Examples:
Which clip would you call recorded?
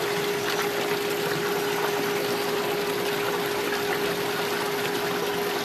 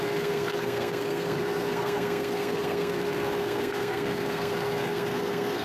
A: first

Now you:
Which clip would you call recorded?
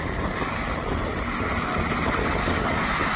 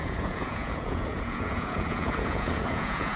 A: first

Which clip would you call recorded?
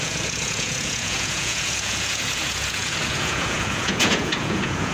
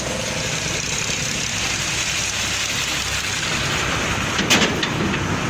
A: second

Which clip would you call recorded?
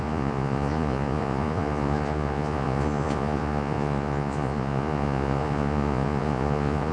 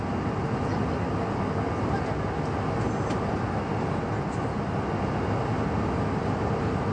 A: second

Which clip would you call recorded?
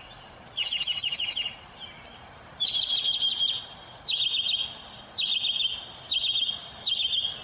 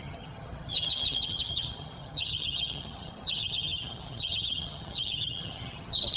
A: first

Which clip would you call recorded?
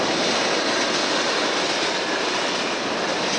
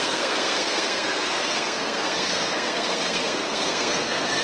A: first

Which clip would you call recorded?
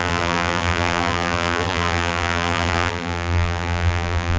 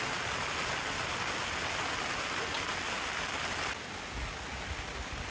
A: second